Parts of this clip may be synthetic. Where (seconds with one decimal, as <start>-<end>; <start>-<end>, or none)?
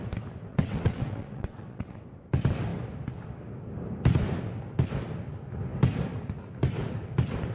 0.5-2.0